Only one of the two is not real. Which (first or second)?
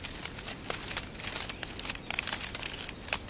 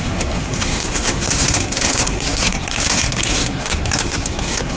second